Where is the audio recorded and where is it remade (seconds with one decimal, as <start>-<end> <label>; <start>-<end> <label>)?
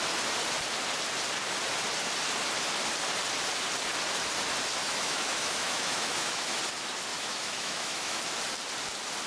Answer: 0.0-4.8 recorded; 4.8-6.6 remade; 6.6-7.1 recorded; 7.1-8.2 remade; 8.2-9.3 recorded